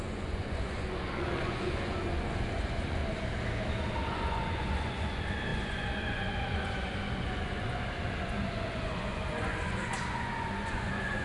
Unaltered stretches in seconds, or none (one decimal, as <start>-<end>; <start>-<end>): 3.0-4.0